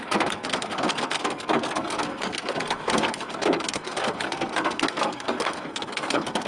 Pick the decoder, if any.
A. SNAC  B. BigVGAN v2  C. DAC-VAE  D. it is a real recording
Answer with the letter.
A